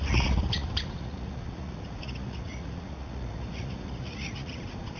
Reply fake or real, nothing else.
fake